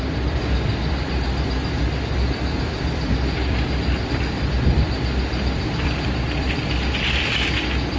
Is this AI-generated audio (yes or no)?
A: yes